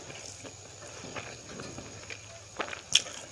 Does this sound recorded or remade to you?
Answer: recorded